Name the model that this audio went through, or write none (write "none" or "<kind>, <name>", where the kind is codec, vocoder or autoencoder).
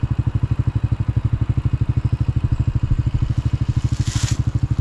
none